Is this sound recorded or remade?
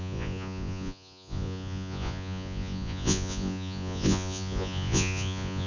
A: remade